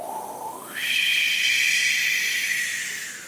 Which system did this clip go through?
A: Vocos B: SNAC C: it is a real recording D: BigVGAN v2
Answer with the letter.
D